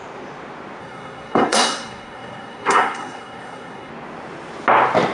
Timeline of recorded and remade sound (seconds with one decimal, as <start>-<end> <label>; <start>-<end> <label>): 0.0-0.8 recorded; 0.8-3.9 remade; 3.9-5.1 recorded